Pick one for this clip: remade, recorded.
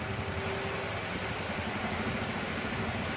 recorded